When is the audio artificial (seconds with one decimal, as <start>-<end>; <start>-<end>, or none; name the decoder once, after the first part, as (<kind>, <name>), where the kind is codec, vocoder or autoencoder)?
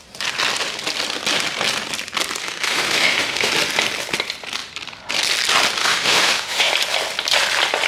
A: 2.4-3.5 (autoencoder, DAC-VAE); 5.8-6.7